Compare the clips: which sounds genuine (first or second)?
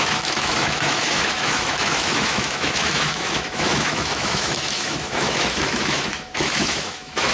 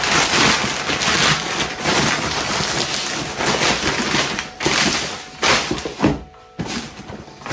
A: second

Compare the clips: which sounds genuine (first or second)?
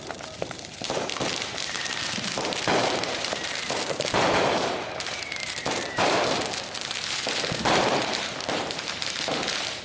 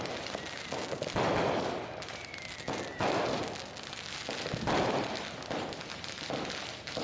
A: second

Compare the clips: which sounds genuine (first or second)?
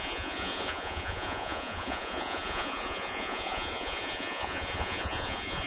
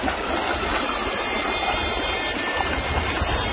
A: second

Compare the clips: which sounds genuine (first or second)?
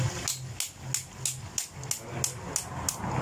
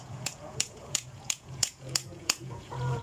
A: first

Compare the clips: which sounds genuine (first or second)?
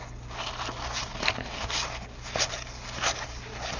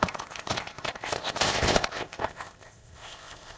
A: first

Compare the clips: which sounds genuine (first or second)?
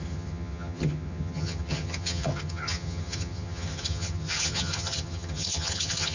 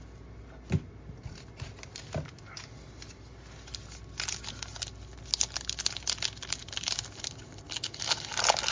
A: second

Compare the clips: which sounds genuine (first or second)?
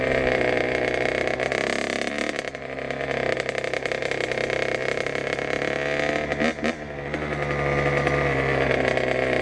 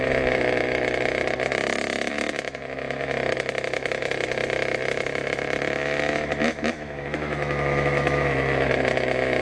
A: first